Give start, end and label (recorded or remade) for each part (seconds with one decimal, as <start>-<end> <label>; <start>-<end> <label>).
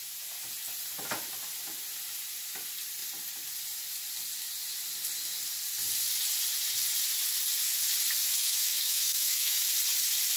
0.0-8.2 recorded; 8.2-9.6 remade; 9.6-10.4 recorded